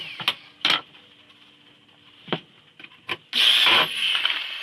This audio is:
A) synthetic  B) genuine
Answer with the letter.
B